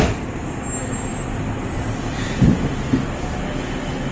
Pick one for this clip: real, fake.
real